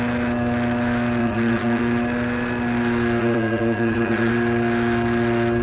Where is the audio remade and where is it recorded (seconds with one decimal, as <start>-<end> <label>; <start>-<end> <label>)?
0.0-1.2 recorded; 1.2-1.8 remade; 1.8-3.2 recorded; 3.2-4.3 remade; 4.3-5.6 recorded

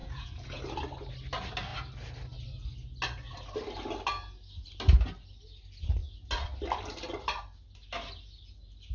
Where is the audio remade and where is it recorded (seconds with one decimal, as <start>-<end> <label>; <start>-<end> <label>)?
0.0-0.6 remade; 0.6-8.9 recorded

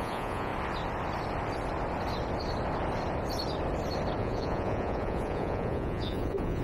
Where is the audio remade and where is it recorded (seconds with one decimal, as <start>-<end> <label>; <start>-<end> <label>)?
0.0-0.5 remade; 0.5-4.2 recorded; 4.2-6.6 remade

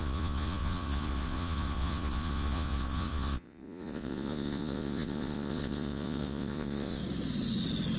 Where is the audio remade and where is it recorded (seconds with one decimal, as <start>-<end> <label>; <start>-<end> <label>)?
0.0-7.0 remade; 7.0-8.0 recorded

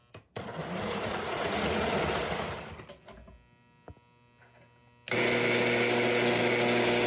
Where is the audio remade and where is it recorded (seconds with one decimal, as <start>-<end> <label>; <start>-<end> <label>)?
0.0-0.6 recorded; 0.6-1.9 remade; 1.9-7.1 recorded